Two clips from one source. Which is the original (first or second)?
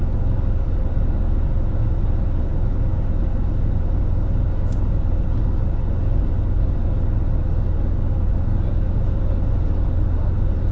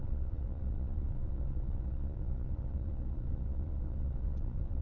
first